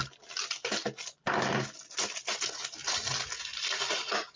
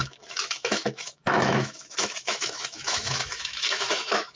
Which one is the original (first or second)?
first